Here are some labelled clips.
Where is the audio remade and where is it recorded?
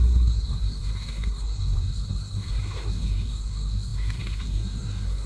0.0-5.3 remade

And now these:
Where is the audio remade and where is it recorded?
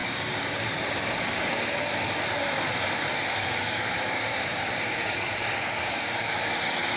0.0-1.5 remade; 1.5-3.3 recorded; 3.3-6.4 remade; 6.4-7.0 recorded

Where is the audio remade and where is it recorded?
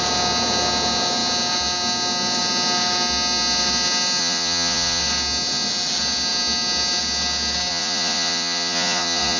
0.0-4.2 recorded; 4.2-5.0 remade; 5.0-7.7 recorded; 7.7-9.4 remade